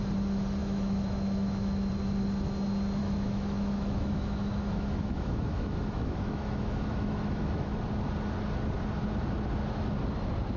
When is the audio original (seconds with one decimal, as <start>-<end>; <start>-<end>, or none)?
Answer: 0.0-0.6; 1.9-3.0; 7.8-10.6